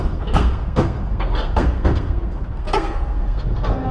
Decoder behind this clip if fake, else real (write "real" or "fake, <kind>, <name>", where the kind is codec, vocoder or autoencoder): fake, codec, SNAC